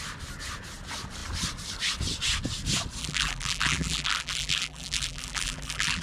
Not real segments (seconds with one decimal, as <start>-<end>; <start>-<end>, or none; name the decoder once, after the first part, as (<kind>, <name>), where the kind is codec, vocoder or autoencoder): 3.0-6.0 (vocoder, BigVGAN v2)